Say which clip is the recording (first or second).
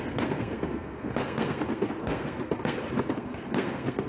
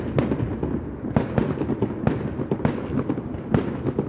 second